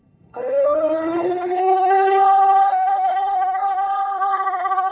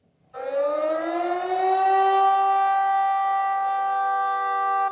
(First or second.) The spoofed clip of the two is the first